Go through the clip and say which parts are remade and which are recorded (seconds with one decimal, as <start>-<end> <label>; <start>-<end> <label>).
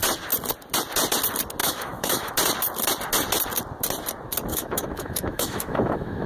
0.0-1.6 recorded; 1.6-2.3 remade; 2.3-4.5 recorded; 4.5-6.3 remade